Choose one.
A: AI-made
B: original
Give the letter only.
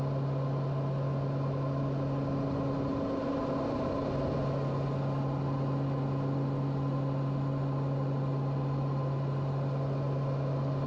B